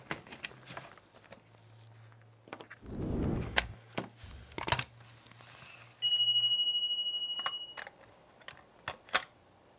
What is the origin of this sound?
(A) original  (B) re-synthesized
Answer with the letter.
A